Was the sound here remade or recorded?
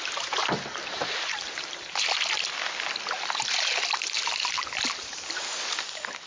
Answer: recorded